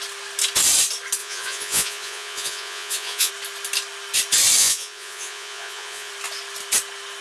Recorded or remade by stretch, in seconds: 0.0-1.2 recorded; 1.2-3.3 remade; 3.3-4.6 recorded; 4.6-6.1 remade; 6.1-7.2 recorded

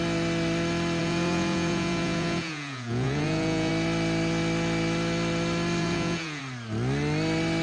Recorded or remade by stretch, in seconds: 0.0-1.0 recorded; 1.0-3.7 remade; 3.7-5.8 recorded; 5.8-6.4 remade; 6.4-7.6 recorded